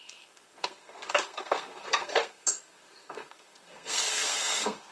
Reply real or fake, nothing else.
fake